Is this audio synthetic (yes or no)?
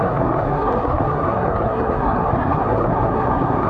yes